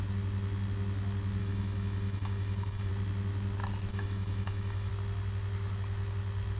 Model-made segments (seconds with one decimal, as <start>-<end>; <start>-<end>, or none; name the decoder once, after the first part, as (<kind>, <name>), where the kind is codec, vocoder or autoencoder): 1.4-2.9 (autoencoder, DAC-VAE); 3.9-4.9